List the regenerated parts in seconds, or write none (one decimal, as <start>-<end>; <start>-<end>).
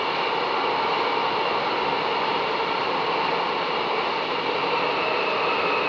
none